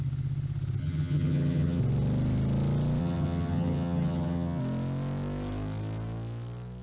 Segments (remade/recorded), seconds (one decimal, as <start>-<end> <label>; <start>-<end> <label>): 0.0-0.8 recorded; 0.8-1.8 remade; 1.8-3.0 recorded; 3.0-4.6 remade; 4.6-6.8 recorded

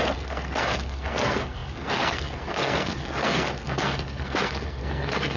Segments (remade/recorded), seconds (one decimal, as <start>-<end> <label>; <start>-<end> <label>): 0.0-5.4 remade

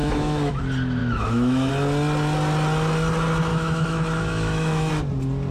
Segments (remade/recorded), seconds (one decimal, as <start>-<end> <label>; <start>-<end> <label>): 0.0-0.6 remade; 0.6-1.0 recorded; 1.0-1.7 remade; 1.7-3.5 recorded; 3.5-4.9 remade; 4.9-5.5 recorded

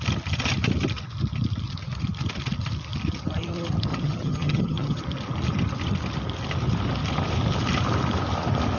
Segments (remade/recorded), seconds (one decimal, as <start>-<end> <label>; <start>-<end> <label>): 0.0-3.9 recorded; 3.9-5.0 remade; 5.0-8.8 recorded

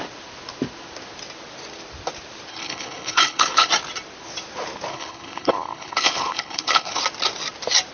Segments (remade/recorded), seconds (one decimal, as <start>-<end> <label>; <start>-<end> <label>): 0.0-2.5 recorded; 2.5-3.7 remade; 3.7-4.9 recorded; 4.9-7.0 remade; 7.0-7.9 recorded

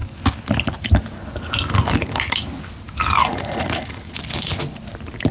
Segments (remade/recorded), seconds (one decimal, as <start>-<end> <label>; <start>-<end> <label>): 0.0-3.2 recorded; 3.2-4.2 remade; 4.2-5.3 recorded